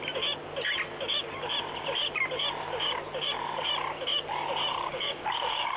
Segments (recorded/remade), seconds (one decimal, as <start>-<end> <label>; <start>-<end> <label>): 0.0-4.7 recorded; 4.7-5.8 remade